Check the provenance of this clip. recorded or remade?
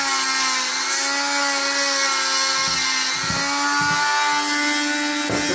recorded